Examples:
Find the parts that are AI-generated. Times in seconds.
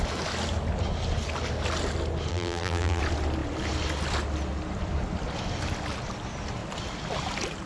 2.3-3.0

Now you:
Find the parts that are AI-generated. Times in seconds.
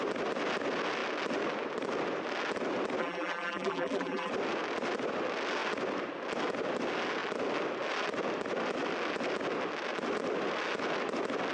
3.0-4.3